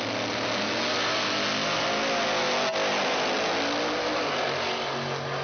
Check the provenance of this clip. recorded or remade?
recorded